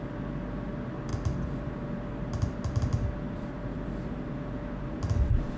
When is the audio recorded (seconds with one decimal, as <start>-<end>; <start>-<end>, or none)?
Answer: 0.0-5.6